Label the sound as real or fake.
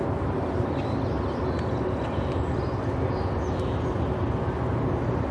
real